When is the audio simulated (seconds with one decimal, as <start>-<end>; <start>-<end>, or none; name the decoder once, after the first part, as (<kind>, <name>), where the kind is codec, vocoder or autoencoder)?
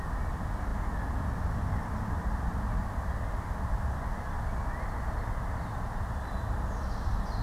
none